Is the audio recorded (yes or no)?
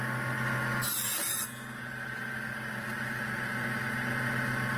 yes